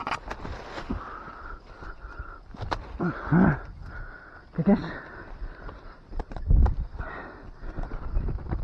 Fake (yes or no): no